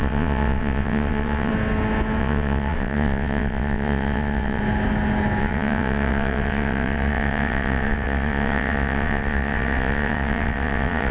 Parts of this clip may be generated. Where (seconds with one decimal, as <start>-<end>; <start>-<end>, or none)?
0.0-1.5; 2.2-4.6; 5.4-11.1